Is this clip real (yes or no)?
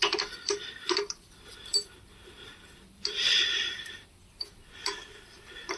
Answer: no